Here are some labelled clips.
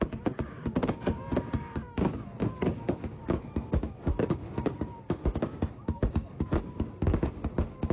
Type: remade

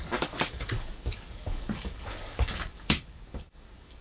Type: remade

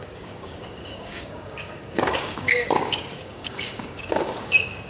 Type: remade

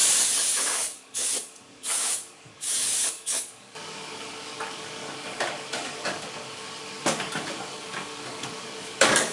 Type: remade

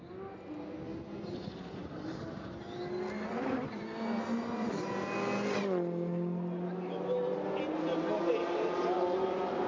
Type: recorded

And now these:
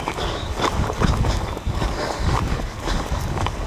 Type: remade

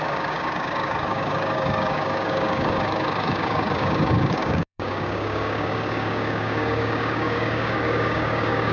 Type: remade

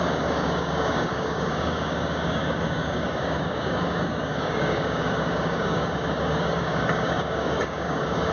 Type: remade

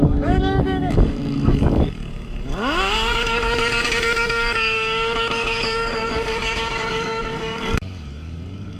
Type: remade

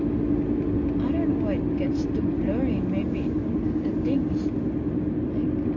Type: recorded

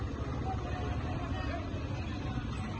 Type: recorded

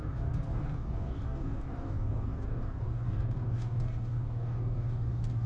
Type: remade